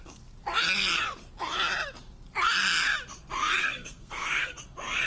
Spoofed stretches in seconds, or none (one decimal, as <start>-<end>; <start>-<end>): 3.6-4.6